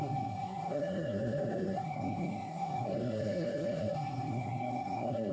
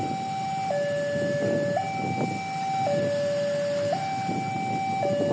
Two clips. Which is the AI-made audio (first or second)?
first